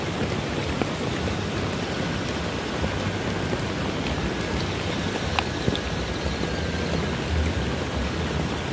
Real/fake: real